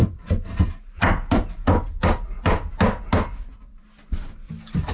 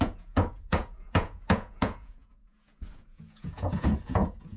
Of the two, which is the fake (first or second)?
second